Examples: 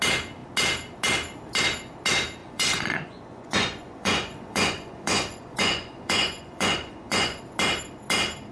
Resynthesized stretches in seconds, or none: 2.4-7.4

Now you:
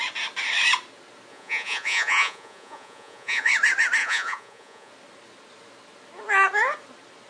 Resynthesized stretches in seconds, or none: 1.3-3.5; 4.0-4.9

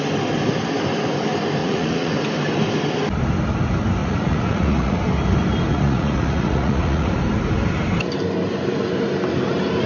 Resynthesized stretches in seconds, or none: 1.6-2.1; 4.0-5.0; 5.7-7.1